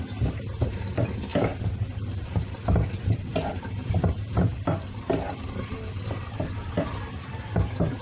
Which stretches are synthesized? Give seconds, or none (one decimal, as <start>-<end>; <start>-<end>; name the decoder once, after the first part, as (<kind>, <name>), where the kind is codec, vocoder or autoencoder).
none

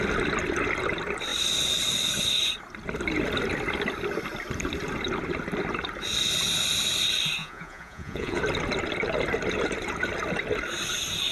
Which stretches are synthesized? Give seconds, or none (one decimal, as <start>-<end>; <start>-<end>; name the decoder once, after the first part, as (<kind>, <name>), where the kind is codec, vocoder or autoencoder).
7.4-8.4 (vocoder, Vocos)

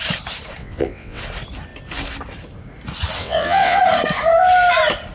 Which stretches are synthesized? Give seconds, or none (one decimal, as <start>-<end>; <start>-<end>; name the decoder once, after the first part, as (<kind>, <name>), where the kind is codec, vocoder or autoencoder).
0.6-1.2 (vocoder, WaveNeXt); 3.2-3.8

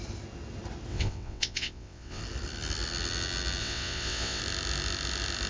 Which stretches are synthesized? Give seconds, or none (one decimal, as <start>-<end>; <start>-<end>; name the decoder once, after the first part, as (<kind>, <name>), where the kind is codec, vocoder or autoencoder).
0.9-2.2 (vocoder, WaveNeXt); 3.6-4.4